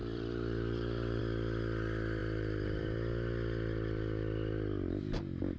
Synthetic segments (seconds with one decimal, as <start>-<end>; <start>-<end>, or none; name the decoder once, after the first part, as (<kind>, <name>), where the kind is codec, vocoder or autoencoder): 0.0-1.2 (vocoder, BigVGAN v2)

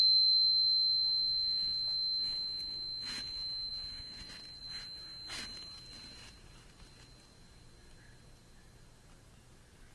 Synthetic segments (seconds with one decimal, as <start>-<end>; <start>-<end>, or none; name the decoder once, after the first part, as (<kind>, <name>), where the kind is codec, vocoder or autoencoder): none

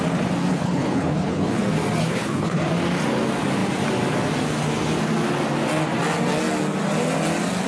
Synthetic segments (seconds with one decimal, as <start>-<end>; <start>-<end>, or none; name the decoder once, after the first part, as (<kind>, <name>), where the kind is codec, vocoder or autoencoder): 0.5-1.6 (codec, HILCodec); 2.0-2.6

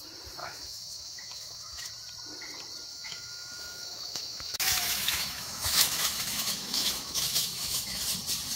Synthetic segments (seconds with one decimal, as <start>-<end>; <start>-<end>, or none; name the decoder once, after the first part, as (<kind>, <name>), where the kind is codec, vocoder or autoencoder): 0.4-1.9 (autoencoder, DAC-VAE); 2.9-8.0

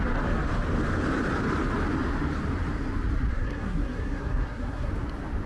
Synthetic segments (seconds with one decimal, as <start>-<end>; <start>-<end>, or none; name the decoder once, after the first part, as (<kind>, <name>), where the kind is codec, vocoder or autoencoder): 3.3-4.9 (codec, SNAC)